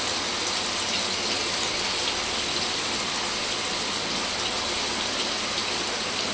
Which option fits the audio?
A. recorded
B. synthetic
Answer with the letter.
A